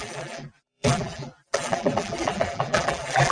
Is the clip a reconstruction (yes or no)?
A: yes